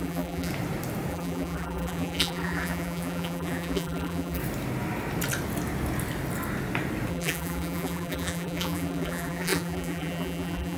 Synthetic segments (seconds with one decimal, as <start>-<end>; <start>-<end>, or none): 0.0-0.5; 1.1-4.4; 7.1-10.8